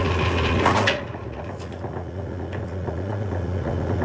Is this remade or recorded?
remade